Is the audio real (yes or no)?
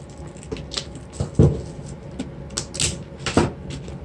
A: yes